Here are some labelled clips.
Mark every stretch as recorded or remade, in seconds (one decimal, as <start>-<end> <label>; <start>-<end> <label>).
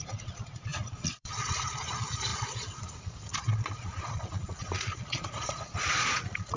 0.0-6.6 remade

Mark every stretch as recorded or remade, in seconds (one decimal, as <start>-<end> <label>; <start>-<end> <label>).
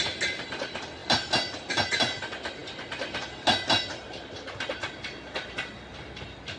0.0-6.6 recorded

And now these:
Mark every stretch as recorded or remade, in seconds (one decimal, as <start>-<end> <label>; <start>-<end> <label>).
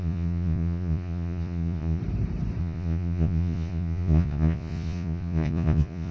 0.0-2.0 remade; 2.0-2.6 recorded; 2.6-6.1 remade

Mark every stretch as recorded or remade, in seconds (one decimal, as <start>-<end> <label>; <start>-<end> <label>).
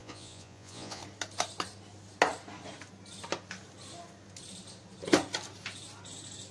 0.0-1.0 remade; 1.0-6.5 recorded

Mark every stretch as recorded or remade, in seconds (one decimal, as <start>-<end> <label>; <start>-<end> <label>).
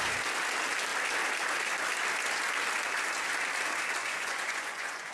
0.0-4.0 recorded; 4.0-5.1 remade